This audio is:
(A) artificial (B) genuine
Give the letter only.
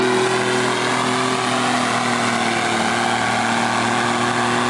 B